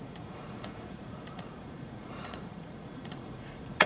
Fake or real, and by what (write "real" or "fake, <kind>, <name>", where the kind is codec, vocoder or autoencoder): fake, vocoder, Vocos